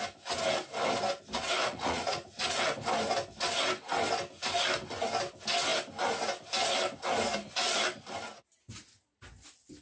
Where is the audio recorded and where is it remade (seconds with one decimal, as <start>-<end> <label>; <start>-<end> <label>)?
0.0-1.6 recorded; 1.6-2.6 remade; 2.6-9.8 recorded